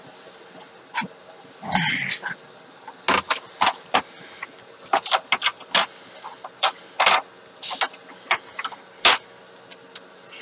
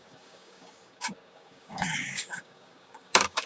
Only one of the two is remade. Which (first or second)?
second